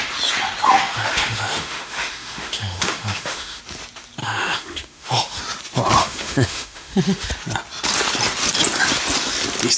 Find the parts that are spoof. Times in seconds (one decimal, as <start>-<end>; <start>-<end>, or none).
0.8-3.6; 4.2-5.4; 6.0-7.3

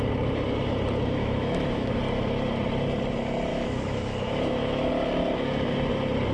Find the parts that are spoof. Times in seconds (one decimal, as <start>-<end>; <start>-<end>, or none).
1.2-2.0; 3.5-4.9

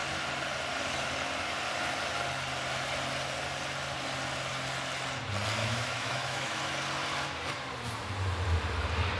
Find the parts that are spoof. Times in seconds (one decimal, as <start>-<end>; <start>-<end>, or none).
5.6-6.6

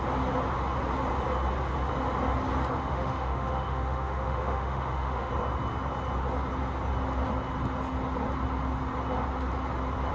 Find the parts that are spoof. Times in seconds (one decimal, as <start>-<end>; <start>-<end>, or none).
2.8-5.3

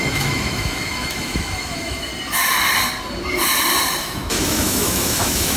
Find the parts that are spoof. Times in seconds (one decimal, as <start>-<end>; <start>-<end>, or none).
0.0-2.1; 4.0-5.6

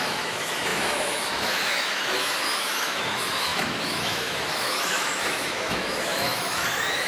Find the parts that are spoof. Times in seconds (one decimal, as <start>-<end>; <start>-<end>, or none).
0.0-7.1

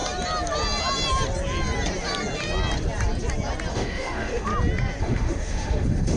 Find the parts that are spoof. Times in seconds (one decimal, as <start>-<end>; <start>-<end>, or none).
3.7-4.5; 5.0-6.2